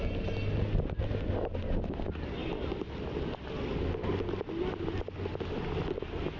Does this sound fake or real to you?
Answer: real